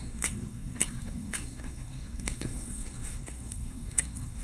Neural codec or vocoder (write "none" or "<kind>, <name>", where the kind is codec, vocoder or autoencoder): codec, SNAC